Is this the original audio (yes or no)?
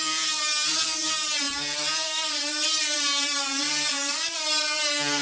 no